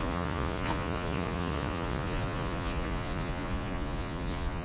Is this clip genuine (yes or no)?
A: no